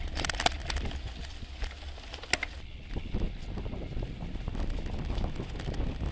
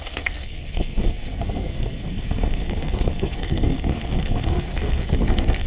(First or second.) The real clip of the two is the first